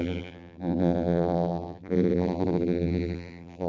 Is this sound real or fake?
fake